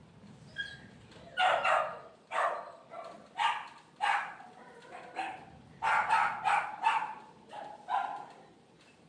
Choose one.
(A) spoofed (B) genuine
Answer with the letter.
B